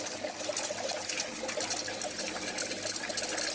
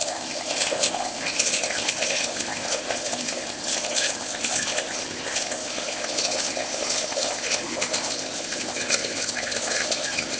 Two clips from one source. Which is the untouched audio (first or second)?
first